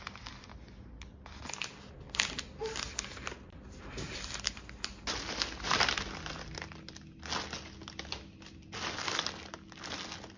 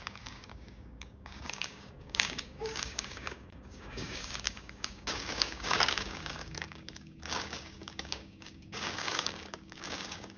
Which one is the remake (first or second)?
second